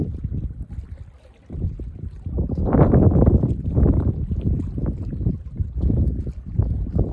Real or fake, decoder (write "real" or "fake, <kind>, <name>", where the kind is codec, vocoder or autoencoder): fake, vocoder, BigVGAN v2